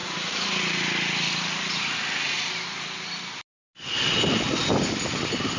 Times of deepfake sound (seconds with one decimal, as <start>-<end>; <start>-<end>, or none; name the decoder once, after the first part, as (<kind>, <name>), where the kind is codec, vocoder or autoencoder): none